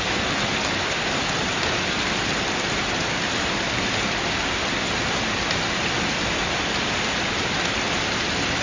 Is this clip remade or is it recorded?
recorded